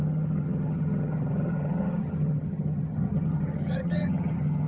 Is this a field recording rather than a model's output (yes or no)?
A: no